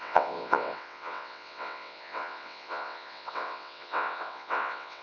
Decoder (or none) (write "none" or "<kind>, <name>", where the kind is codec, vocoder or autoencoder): vocoder, WaveNeXt